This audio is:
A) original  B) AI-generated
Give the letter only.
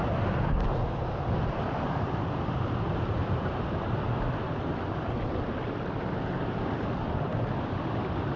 A